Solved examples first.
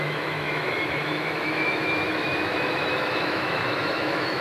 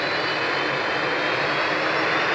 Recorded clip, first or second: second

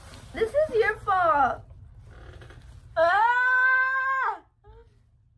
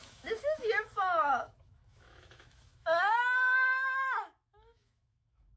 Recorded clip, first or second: first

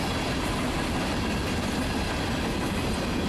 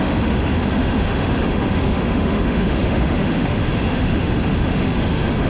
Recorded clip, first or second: first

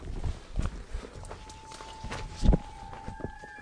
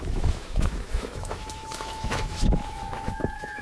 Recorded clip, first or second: first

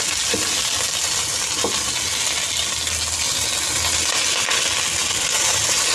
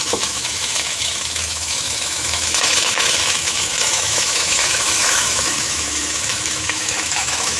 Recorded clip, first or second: first